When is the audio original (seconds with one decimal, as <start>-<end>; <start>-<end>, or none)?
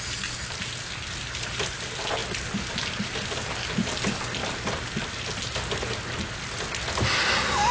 0.0-7.7